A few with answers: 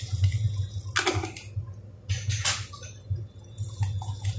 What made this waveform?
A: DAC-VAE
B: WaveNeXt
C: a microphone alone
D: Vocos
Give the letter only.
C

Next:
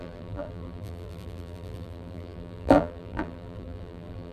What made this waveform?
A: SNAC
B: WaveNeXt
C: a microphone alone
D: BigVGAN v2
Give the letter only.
D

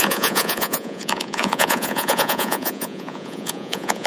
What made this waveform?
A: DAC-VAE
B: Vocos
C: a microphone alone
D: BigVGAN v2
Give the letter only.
B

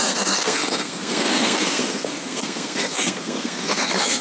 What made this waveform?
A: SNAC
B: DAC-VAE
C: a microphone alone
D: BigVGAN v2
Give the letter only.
A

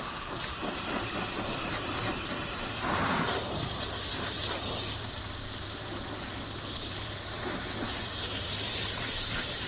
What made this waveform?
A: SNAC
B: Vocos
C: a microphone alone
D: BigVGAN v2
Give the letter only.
D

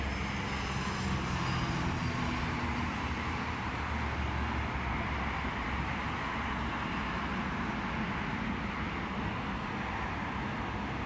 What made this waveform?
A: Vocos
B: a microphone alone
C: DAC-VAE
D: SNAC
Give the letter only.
B